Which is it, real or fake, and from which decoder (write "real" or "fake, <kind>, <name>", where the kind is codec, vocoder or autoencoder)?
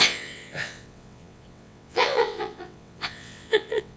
fake, vocoder, WaveNeXt